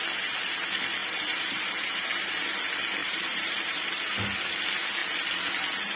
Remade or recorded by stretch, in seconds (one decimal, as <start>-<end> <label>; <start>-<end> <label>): 0.0-1.0 recorded; 1.0-2.3 remade; 2.3-3.0 recorded; 3.0-3.9 remade; 3.9-6.0 recorded